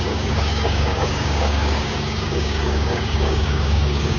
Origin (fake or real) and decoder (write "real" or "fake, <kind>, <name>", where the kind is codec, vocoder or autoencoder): fake, codec, DAC